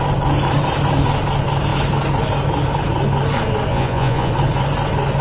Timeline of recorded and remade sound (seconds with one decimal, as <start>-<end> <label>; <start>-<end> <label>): 0.0-3.7 recorded; 3.7-4.3 remade; 4.3-5.2 recorded